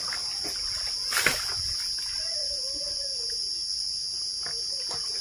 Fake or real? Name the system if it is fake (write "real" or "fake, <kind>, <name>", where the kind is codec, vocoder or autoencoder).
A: real